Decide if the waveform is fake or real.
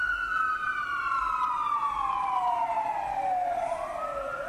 real